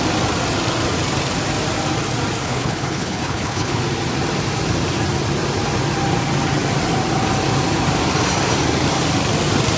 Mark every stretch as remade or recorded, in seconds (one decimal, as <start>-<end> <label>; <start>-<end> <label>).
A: 0.0-2.4 recorded; 2.4-3.8 remade; 3.8-9.8 recorded